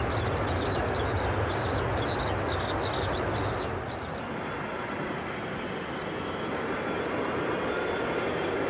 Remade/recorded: recorded